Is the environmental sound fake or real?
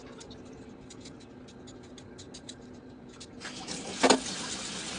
real